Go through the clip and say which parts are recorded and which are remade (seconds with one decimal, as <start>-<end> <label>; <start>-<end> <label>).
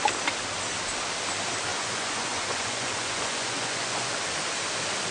0.0-1.7 recorded; 1.7-4.1 remade; 4.1-5.1 recorded